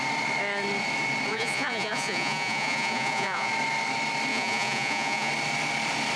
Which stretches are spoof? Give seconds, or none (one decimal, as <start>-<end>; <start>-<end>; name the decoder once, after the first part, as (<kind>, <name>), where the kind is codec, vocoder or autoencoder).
1.3-3.5 (vocoder, Vocos); 4.3-5.3